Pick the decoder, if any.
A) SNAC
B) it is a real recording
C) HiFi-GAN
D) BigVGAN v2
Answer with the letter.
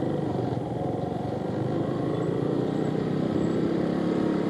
D